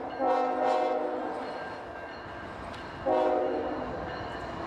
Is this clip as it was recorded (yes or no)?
yes